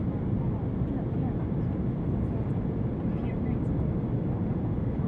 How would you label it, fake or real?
real